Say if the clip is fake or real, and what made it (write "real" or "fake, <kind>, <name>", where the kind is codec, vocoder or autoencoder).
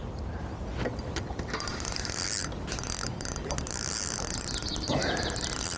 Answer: real